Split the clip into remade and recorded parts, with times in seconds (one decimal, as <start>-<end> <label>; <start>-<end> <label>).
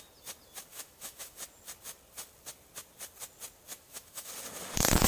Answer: 0.0-0.7 recorded; 0.7-1.4 remade; 1.4-3.7 recorded; 3.7-4.3 remade; 4.3-5.1 recorded